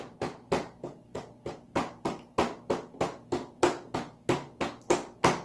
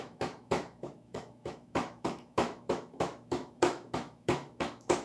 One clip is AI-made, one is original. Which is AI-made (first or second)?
second